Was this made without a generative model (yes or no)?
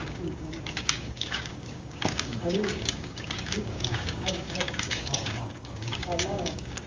no